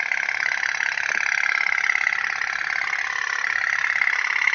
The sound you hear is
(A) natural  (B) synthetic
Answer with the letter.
A